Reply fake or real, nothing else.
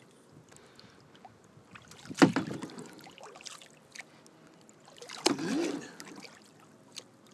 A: real